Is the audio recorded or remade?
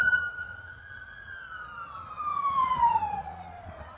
remade